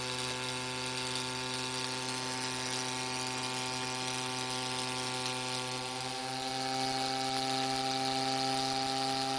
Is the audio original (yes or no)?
yes